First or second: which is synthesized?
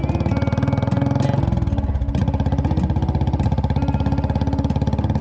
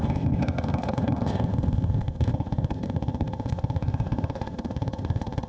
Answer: second